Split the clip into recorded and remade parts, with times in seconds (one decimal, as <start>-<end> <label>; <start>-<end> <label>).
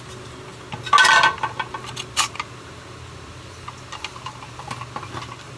0.0-5.6 recorded